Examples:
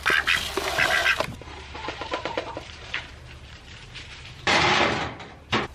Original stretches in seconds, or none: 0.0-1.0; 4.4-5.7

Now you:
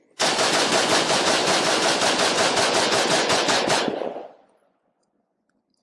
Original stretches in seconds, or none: none